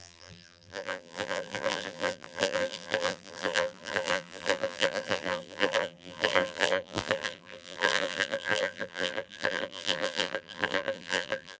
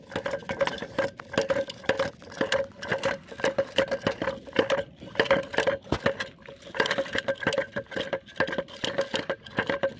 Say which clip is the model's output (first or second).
first